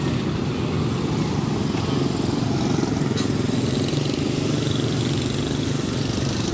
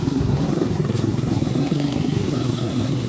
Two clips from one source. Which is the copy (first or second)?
second